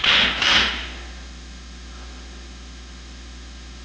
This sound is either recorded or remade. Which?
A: remade